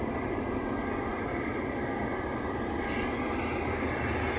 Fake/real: real